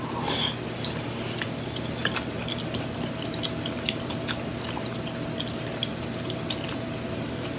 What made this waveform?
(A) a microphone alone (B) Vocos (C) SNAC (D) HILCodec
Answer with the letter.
A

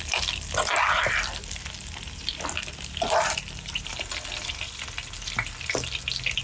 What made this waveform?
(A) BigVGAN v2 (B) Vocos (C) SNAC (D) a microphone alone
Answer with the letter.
D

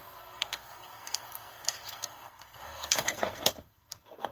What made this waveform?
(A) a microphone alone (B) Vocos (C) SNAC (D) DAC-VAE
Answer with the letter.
C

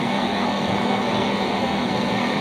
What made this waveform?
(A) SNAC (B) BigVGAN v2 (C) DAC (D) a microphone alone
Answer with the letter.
A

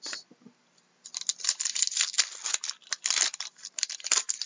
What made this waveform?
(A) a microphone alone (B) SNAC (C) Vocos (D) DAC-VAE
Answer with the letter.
A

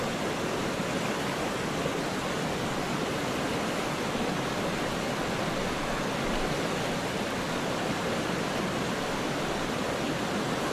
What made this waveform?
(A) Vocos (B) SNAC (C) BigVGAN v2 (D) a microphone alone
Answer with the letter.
D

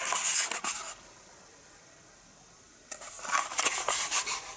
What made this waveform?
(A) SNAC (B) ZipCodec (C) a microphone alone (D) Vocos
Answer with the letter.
C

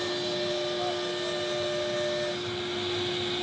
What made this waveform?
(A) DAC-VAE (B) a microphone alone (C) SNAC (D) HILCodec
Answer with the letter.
B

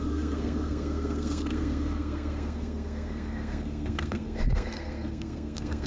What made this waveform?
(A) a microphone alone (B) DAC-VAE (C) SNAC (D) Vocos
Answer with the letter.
C